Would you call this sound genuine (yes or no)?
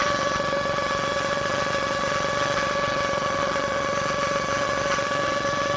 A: no